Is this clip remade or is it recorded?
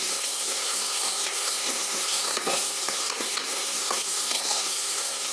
remade